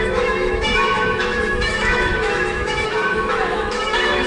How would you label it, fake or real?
fake